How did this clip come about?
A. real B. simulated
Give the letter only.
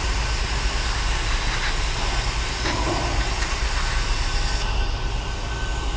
A